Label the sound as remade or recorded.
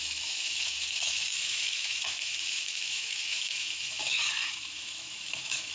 remade